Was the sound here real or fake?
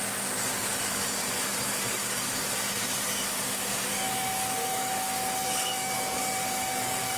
fake